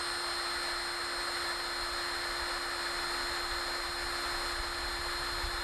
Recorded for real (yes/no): yes